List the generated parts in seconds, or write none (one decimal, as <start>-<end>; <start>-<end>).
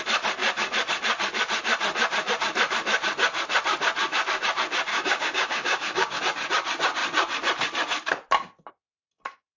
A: 4.9-6.2